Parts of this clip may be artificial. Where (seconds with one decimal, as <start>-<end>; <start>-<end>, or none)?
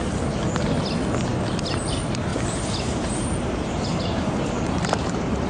2.3-5.5